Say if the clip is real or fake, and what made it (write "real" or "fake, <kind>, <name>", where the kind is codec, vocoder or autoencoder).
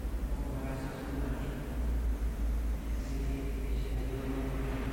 real